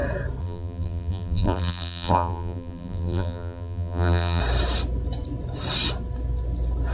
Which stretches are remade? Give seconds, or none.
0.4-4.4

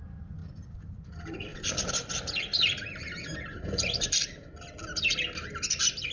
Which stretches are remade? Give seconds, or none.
0.4-1.0; 1.5-2.1

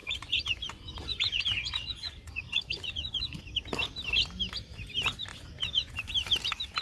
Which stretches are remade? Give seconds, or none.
0.0-3.4; 5.3-6.1

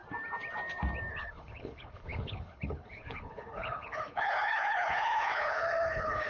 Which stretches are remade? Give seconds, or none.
1.1-6.3

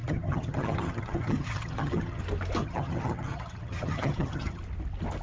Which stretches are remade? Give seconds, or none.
0.0-2.2; 2.6-4.6

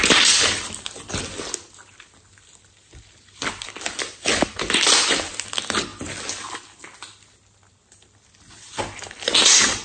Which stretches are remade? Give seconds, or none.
none

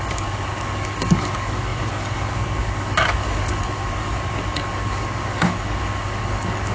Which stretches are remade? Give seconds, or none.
0.0-6.7

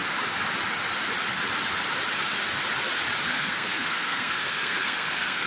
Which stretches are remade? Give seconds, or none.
3.3-5.5